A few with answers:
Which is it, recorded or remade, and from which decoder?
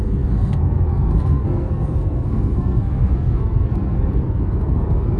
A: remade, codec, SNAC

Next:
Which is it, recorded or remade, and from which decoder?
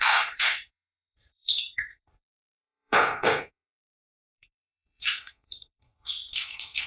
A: remade, codec, SNAC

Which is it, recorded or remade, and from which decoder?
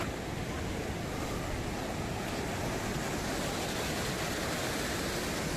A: recorded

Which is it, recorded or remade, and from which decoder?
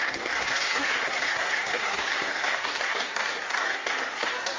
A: remade, codec, SNAC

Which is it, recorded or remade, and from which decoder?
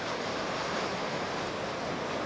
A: recorded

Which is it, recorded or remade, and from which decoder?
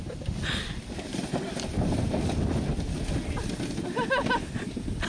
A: recorded